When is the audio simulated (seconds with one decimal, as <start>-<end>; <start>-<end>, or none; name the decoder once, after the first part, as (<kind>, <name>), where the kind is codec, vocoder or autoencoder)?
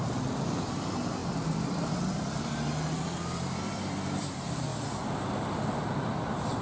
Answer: 0.0-4.7 (vocoder, BigVGAN v2); 5.8-6.6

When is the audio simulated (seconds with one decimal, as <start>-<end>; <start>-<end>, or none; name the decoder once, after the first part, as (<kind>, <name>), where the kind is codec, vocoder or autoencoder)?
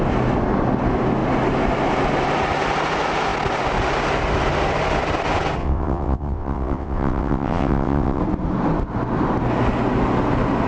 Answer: 5.6-8.2 (vocoder, WaveNeXt)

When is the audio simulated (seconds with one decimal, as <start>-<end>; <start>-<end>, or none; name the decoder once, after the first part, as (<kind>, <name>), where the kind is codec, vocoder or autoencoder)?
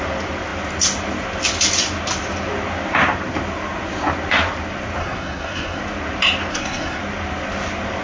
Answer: 5.0-5.8 (codec, SNAC); 6.5-7.0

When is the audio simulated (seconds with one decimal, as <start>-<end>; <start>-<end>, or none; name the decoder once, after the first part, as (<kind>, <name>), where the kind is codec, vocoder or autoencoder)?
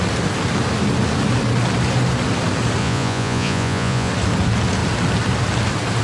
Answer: 2.8-4.1 (vocoder, Vocos)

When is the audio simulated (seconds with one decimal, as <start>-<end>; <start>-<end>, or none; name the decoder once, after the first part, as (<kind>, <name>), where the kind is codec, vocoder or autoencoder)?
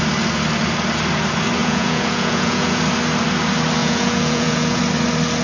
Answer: 1.6-2.8 (vocoder, Vocos); 3.8-4.8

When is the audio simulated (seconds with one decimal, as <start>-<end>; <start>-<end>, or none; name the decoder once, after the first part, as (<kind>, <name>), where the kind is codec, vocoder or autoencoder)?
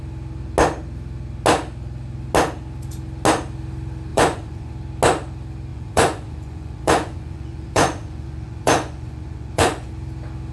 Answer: 4.1-4.7 (vocoder, Vocos); 5.7-9.9